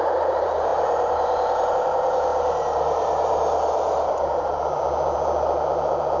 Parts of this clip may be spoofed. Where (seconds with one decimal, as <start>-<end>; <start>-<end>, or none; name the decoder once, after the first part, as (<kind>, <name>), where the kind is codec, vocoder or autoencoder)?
none